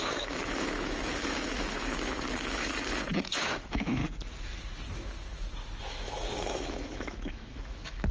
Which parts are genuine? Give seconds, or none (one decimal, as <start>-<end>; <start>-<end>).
4.0-5.8